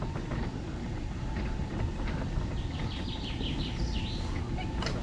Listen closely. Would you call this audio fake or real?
real